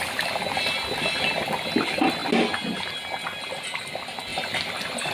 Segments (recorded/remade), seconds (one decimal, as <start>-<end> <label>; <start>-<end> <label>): 0.0-5.1 recorded